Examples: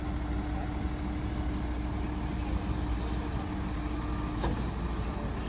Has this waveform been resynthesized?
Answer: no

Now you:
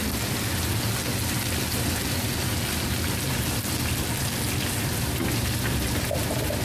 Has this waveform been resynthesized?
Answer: no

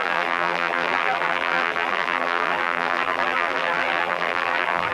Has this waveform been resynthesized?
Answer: yes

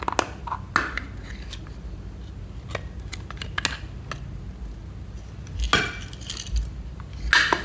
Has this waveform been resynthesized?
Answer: no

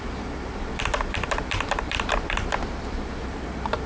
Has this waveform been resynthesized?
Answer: yes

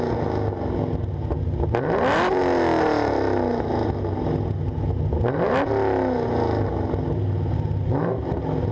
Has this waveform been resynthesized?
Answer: no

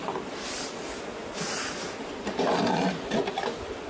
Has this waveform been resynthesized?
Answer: no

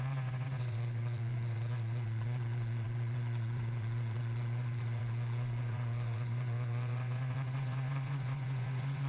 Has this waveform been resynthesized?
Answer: yes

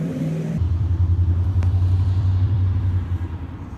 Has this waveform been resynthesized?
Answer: yes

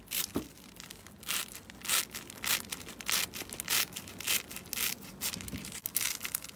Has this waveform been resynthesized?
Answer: no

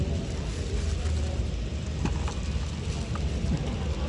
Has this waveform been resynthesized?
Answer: no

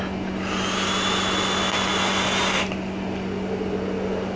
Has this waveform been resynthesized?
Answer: no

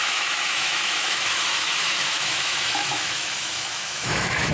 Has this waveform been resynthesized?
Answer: yes